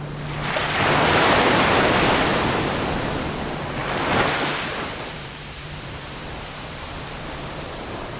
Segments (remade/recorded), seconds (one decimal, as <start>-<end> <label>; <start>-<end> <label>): 0.0-0.6 recorded; 0.6-1.1 remade; 1.1-3.8 recorded; 3.8-8.2 remade